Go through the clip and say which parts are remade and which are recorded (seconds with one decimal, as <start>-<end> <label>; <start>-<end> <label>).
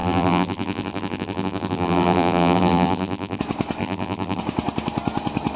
0.0-3.4 remade; 3.4-3.8 recorded; 3.8-4.4 remade; 4.4-5.6 recorded